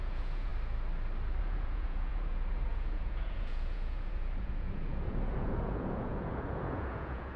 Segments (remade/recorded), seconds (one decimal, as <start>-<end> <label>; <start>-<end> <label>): 0.0-0.5 remade; 0.5-1.4 recorded; 1.4-7.4 remade